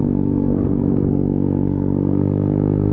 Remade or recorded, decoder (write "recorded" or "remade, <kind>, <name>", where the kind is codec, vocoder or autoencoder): remade, codec, SNAC